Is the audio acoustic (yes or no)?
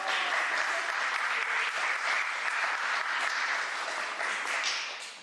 yes